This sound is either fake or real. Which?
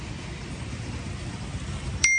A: real